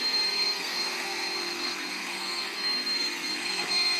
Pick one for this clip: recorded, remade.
remade